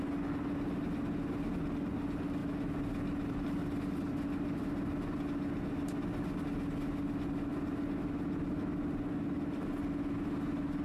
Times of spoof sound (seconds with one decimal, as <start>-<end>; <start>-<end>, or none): none